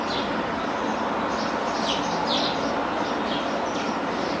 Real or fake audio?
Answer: real